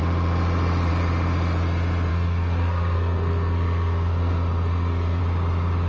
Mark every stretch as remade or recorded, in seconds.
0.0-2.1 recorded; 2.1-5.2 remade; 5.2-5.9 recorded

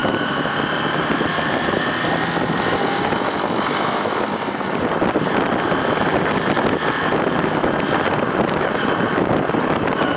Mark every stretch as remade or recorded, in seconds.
0.0-2.0 remade; 2.0-10.2 recorded

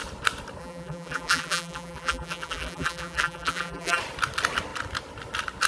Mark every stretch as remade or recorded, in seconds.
0.0-0.6 recorded; 0.6-4.0 remade; 4.0-5.7 recorded